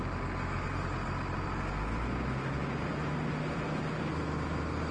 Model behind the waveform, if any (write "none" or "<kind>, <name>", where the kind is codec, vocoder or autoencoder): none